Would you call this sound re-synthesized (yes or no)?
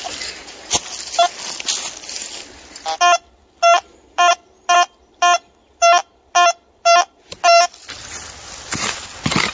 no